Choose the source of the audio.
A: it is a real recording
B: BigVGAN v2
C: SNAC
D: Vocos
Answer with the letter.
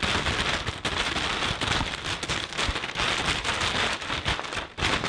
A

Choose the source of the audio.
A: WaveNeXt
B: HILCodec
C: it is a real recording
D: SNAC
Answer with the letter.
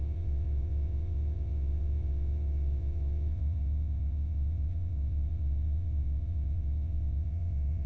A